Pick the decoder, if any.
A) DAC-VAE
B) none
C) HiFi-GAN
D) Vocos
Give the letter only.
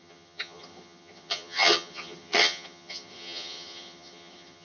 C